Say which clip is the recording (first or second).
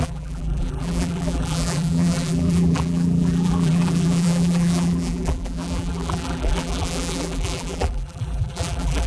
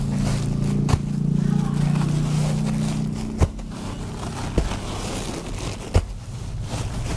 second